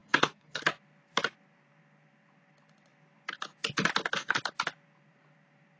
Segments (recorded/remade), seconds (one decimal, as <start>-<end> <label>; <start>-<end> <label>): 0.0-0.6 remade; 0.6-5.8 recorded